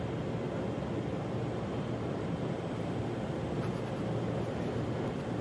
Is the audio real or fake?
real